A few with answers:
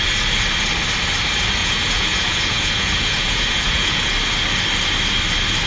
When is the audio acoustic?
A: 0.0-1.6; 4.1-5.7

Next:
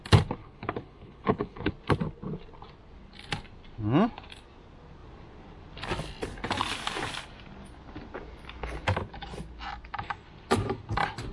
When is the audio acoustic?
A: 0.0-0.4; 1.7-11.3